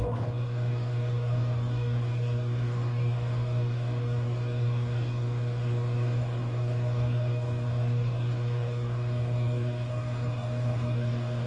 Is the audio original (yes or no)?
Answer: no